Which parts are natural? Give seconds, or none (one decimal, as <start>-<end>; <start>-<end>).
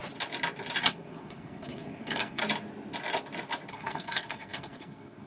0.0-0.8; 2.4-3.7